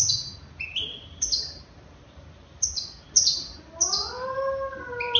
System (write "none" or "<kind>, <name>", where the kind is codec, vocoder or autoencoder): none